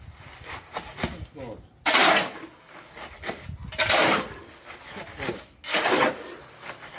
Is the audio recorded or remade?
recorded